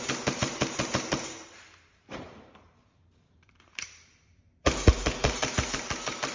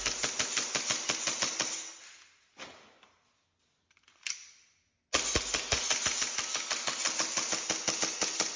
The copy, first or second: first